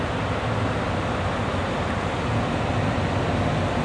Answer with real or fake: real